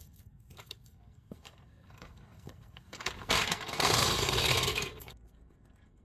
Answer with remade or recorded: remade